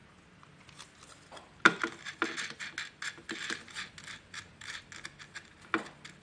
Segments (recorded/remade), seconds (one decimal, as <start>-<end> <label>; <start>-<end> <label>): 0.0-6.2 recorded